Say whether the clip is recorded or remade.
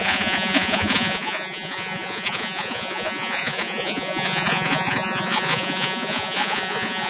remade